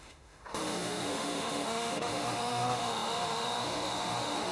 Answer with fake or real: fake